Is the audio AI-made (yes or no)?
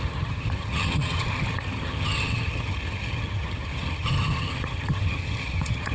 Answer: yes